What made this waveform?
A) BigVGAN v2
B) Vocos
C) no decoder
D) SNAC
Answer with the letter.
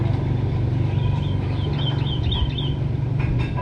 C